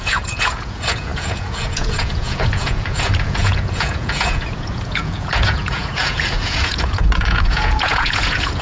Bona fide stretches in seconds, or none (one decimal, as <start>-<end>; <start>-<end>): none